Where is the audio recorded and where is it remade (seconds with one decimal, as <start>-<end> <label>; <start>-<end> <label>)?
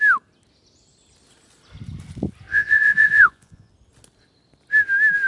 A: 0.0-2.5 recorded; 2.5-3.7 remade; 3.7-5.3 recorded